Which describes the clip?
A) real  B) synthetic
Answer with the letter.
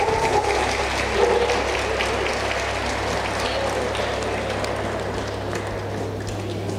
A